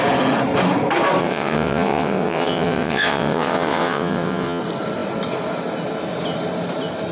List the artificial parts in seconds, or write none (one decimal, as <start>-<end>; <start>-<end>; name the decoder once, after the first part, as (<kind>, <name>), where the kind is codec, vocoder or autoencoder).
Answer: 1.2-4.6 (vocoder, WaveNeXt)